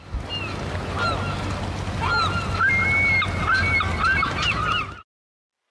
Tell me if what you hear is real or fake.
real